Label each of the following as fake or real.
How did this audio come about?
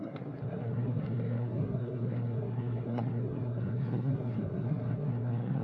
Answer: fake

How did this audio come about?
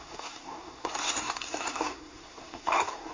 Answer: fake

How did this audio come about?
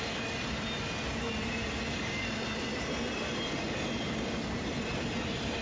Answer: real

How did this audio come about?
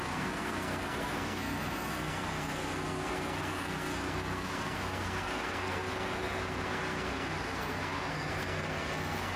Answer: fake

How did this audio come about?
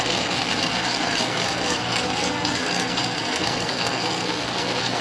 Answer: fake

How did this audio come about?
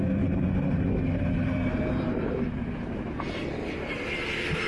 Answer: real